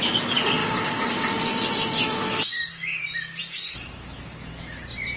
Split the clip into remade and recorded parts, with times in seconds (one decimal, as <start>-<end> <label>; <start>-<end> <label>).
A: 0.0-1.9 recorded; 1.9-3.0 remade; 3.0-3.4 recorded; 3.4-4.8 remade; 4.8-5.2 recorded